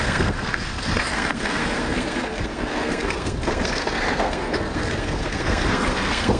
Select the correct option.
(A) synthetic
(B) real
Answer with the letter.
A